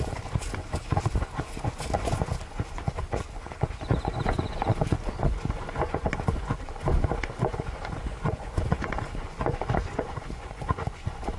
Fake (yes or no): yes